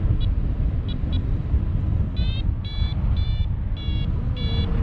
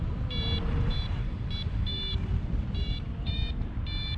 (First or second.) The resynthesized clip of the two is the second